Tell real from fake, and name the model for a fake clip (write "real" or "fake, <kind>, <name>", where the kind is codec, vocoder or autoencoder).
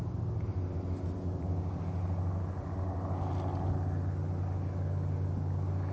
real